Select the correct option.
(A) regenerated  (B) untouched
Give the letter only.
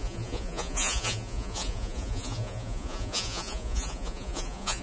A